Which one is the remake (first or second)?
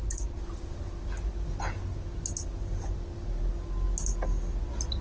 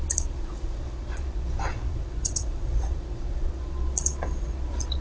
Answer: second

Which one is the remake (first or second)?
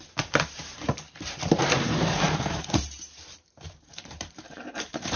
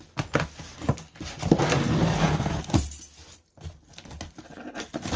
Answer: first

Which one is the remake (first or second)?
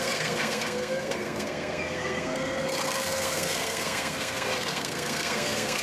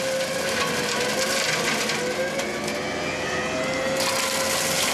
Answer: first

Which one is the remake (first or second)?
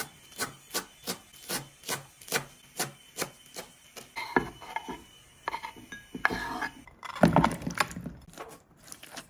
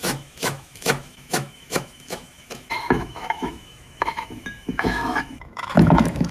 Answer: second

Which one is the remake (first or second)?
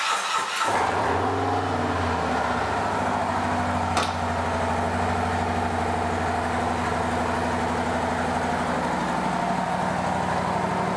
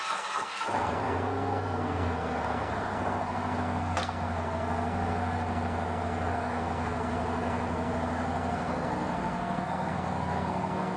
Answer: second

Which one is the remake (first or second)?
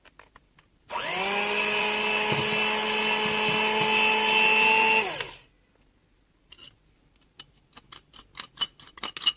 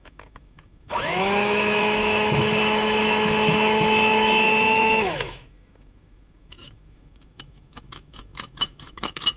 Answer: second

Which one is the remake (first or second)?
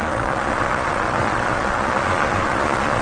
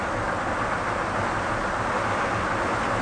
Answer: first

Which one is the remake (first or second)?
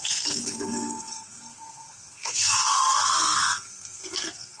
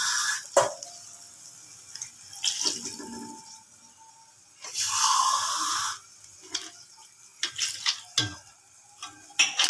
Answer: first